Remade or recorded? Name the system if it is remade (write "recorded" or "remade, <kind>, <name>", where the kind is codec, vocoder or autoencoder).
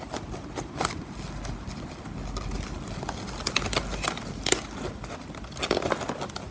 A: recorded